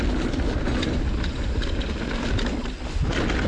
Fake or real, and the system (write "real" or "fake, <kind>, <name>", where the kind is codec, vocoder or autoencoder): real